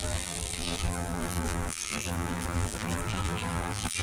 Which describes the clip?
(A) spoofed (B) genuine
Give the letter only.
A